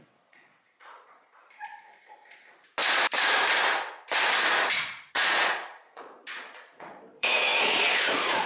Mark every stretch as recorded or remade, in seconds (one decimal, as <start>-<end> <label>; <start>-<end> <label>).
0.0-1.4 remade; 1.4-4.7 recorded; 4.7-8.5 remade